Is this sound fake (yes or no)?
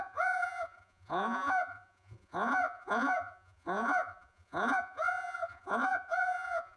yes